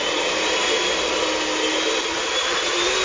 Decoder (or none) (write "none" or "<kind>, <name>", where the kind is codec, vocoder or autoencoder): none